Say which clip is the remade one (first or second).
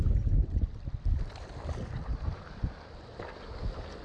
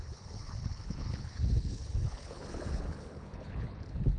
second